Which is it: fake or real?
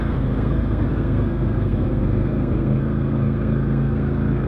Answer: fake